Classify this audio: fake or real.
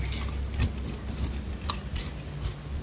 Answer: real